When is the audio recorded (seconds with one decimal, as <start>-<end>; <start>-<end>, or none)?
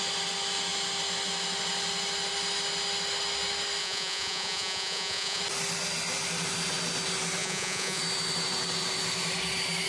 0.0-3.8; 5.4-7.4; 8.0-9.9